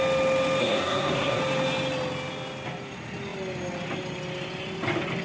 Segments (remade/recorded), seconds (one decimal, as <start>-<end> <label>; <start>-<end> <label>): 0.0-0.6 recorded; 0.6-1.4 remade; 1.4-5.2 recorded